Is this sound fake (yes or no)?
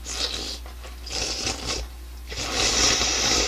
no